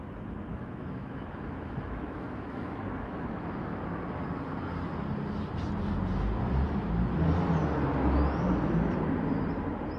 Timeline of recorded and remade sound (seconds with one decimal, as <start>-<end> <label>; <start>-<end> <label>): 0.0-0.5 recorded; 0.5-3.8 remade; 3.8-10.0 recorded